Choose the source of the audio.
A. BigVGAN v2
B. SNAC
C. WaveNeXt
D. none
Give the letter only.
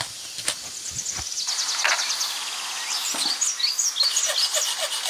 D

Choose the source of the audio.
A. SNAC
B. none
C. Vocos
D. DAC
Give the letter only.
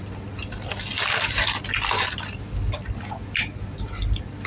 B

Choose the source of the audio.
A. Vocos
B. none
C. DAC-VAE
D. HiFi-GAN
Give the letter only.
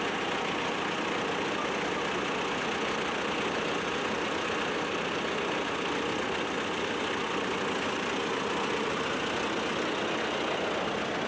B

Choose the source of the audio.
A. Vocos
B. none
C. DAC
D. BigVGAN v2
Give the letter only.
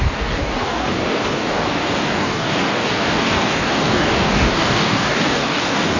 C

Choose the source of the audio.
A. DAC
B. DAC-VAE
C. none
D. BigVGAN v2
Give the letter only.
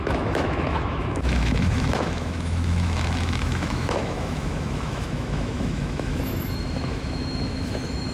B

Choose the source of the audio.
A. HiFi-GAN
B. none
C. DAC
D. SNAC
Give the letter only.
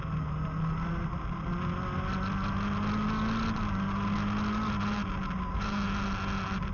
B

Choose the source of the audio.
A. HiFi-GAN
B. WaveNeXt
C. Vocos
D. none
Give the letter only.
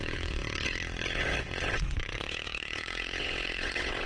B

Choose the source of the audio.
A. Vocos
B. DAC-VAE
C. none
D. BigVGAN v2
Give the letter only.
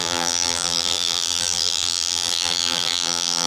D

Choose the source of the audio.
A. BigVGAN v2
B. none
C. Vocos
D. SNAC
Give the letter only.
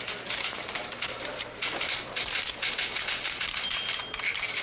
B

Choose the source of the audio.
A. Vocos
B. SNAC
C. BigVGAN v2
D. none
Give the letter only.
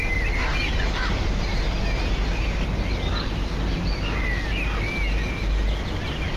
D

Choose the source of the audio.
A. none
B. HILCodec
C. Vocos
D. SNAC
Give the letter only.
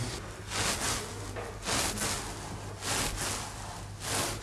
A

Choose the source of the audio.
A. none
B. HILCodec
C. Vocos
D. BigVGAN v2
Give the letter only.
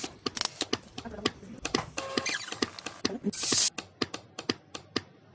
A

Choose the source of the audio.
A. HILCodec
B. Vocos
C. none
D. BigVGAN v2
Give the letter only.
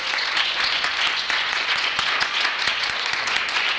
B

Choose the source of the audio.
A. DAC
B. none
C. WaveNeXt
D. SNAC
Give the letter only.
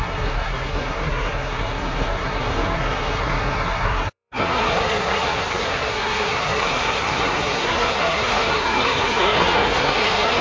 D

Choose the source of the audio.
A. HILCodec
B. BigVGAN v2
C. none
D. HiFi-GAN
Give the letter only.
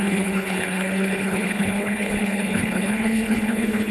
A